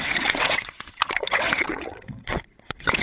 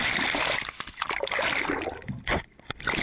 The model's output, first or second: first